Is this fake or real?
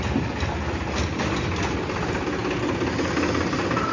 real